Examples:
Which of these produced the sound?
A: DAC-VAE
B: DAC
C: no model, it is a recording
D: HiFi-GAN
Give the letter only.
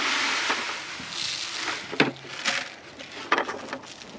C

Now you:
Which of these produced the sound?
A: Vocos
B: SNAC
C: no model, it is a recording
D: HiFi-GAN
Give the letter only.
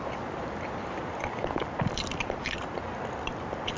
C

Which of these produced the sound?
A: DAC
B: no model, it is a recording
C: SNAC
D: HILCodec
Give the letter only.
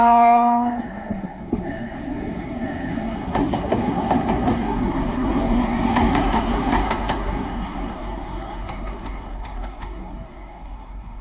C